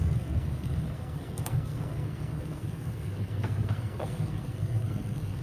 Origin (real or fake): fake